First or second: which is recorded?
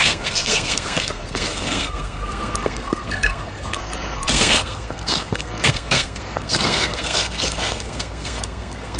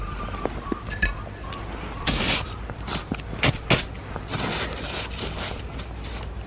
second